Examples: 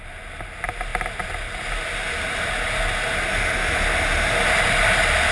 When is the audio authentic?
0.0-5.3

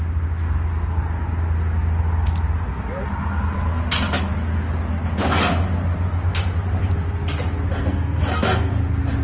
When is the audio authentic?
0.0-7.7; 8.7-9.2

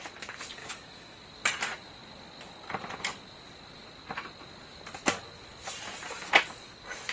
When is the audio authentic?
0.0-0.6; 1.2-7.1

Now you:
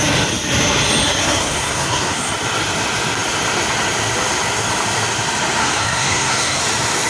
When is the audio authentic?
0.0-1.2; 2.3-5.6; 6.6-7.1

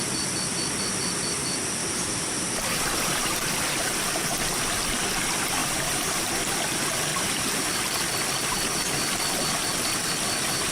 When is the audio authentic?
0.0-1.8; 4.0-5.6; 6.3-7.1; 7.7-10.7

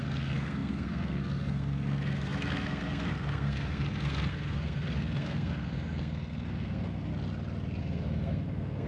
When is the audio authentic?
7.1-7.8

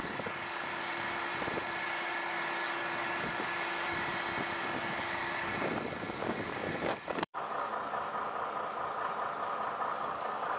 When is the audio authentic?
1.3-1.8; 4.1-4.6; 7.7-10.0

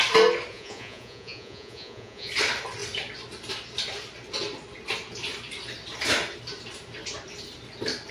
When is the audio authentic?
0.0-0.5; 2.3-8.1